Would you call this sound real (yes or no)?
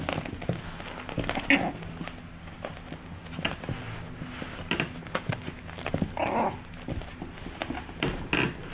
yes